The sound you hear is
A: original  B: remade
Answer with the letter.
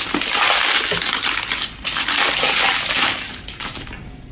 A